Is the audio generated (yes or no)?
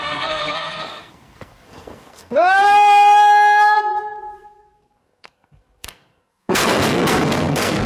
yes